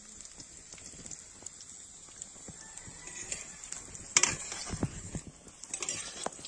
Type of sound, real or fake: real